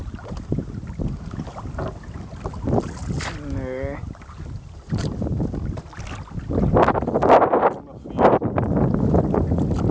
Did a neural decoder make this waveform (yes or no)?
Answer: no